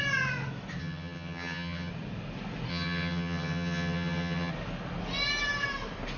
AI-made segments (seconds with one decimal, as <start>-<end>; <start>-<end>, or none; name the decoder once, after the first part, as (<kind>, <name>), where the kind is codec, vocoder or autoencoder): 0.8-1.9 (vocoder, HiFi-GAN); 2.7-4.5